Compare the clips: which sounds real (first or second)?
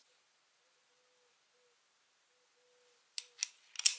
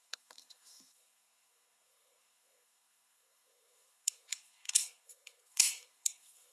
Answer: first